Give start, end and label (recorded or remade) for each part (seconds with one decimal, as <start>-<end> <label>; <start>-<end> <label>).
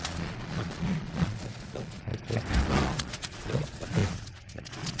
0.0-2.1 remade; 2.1-2.6 recorded; 2.6-5.0 remade